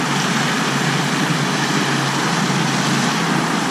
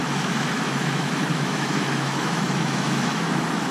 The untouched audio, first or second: first